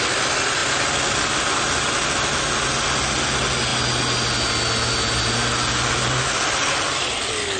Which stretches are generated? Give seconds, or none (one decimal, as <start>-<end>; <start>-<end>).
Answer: none